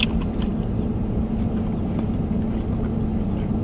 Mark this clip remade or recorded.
recorded